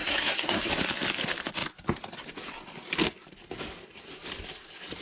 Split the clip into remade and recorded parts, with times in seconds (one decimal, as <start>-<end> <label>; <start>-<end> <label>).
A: 0.0-0.7 remade; 0.7-5.0 recorded